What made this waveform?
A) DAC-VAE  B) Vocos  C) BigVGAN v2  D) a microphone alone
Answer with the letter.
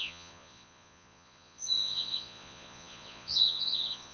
B